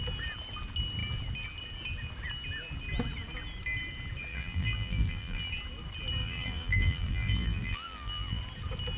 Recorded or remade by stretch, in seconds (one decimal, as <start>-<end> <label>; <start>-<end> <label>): 0.0-4.3 recorded; 4.3-5.5 remade; 5.5-6.2 recorded; 6.2-8.4 remade; 8.4-9.0 recorded